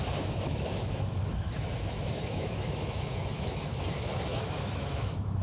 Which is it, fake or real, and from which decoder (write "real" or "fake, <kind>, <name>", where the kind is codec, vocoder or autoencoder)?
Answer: fake, autoencoder, DAC-VAE